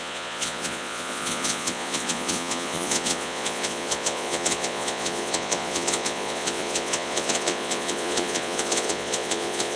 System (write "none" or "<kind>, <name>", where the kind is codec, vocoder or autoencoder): vocoder, Vocos